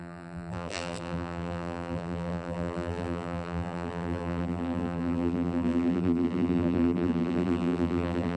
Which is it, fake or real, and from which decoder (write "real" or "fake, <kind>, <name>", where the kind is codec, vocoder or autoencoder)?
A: fake, vocoder, BigVGAN v2